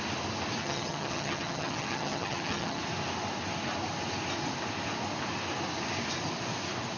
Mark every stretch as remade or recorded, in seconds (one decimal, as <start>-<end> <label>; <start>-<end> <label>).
0.0-0.6 recorded; 0.6-2.8 remade; 2.8-7.0 recorded